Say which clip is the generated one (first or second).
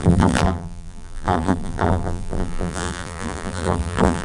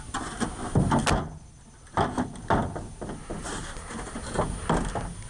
first